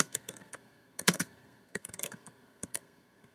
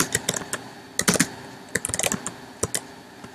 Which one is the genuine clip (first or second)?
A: second